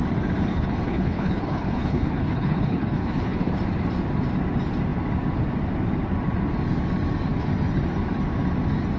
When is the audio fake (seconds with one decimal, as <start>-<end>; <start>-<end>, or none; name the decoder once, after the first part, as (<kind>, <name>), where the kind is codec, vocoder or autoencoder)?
0.5-3.5 (codec, HILCodec)